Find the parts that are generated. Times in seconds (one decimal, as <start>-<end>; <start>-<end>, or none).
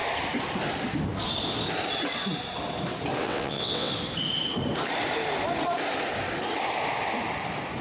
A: 3.2-3.9